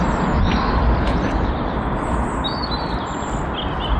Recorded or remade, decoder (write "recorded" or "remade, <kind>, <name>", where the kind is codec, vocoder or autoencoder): recorded